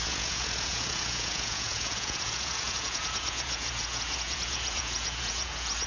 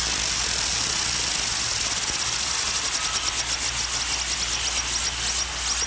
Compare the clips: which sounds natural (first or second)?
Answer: second